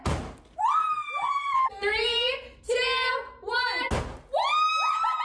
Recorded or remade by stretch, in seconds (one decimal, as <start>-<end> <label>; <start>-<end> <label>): 0.0-0.8 recorded; 0.8-3.1 remade; 3.1-5.2 recorded

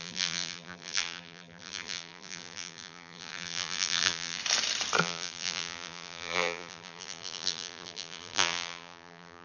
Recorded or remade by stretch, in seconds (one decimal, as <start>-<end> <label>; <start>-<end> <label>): 0.0-4.4 remade; 4.4-5.0 recorded; 5.0-9.4 remade

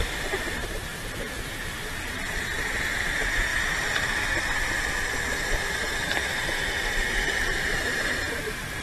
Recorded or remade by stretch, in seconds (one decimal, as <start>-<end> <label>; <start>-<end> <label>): 0.0-8.8 remade

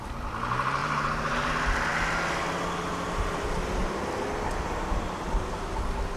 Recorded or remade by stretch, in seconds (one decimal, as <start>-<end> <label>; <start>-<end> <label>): 0.0-0.8 recorded; 0.8-1.5 remade; 1.5-6.2 recorded

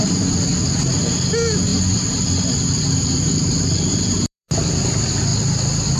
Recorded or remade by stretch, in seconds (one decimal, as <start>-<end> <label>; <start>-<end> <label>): 0.0-1.0 remade; 1.0-1.7 recorded; 1.7-4.7 remade; 4.7-6.0 recorded